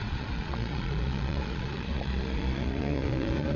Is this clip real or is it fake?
fake